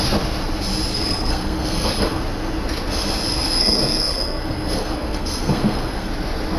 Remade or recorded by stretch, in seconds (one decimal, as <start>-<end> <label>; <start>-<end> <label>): 0.0-0.9 recorded; 0.9-2.2 remade; 2.2-3.6 recorded; 3.6-6.1 remade; 6.1-6.6 recorded

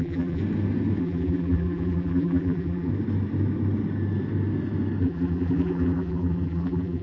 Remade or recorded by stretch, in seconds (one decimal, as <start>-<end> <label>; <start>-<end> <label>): 0.0-0.4 remade; 0.4-1.0 recorded; 1.0-2.9 remade; 2.9-5.0 recorded; 5.0-7.0 remade

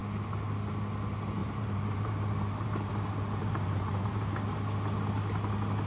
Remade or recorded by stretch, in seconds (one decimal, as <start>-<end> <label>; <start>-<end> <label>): 0.0-1.4 recorded; 1.4-2.9 remade; 2.9-3.4 recorded; 3.4-4.3 remade; 4.3-5.9 recorded

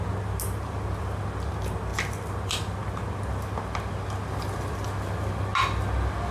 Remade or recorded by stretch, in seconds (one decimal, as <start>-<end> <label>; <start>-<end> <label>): 0.0-6.3 recorded

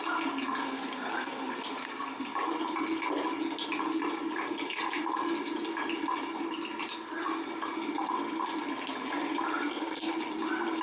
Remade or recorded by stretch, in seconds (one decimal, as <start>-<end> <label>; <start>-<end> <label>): 0.0-0.6 recorded; 0.6-1.6 remade; 1.6-9.5 recorded; 9.5-10.2 remade; 10.2-10.8 recorded